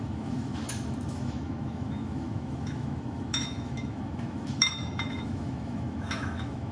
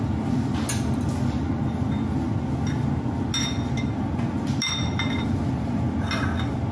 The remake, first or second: first